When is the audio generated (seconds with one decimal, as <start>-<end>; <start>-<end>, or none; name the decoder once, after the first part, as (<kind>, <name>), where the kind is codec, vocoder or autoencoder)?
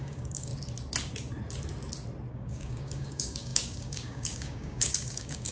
0.0-0.5 (codec, DAC); 2.3-5.5